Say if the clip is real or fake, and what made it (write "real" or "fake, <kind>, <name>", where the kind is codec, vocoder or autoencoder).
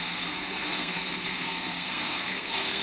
fake, codec, SNAC